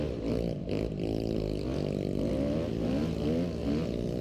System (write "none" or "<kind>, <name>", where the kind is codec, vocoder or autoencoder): none